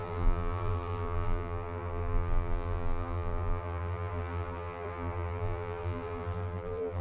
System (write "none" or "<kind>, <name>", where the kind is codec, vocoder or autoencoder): vocoder, BigVGAN v2